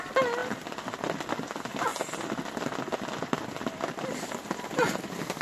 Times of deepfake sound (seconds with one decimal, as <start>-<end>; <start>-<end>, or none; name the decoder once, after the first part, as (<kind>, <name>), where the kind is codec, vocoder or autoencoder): none